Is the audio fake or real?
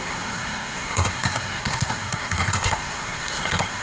fake